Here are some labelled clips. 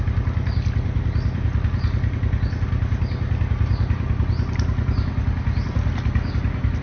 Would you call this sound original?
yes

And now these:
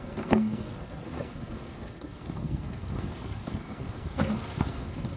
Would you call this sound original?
no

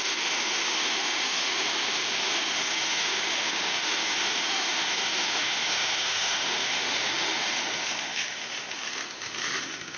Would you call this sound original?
no